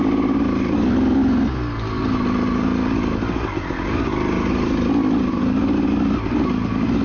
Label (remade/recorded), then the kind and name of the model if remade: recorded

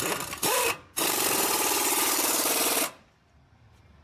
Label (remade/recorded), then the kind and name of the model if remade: recorded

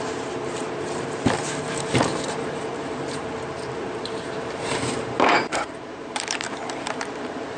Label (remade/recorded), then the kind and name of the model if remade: remade, vocoder, BigVGAN v2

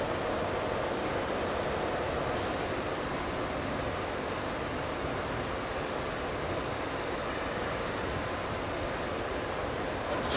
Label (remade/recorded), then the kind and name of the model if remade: recorded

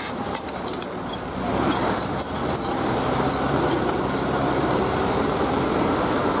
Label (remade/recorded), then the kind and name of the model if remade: remade, vocoder, BigVGAN v2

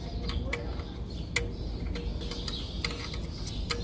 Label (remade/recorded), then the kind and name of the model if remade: recorded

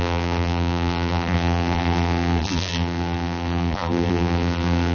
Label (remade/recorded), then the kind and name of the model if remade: remade, vocoder, BigVGAN v2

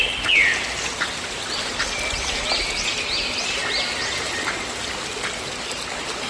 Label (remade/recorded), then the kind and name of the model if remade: recorded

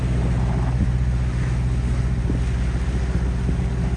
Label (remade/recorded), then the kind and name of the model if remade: recorded